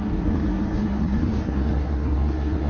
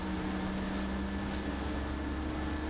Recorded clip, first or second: second